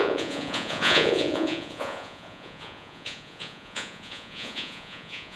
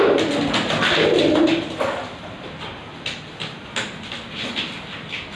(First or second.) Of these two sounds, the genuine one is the second